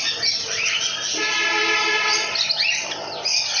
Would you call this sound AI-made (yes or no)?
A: no